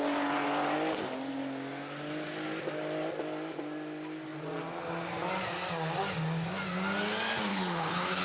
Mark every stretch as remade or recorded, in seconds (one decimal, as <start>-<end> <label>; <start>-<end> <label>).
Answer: 0.0-7.5 recorded; 7.5-8.2 remade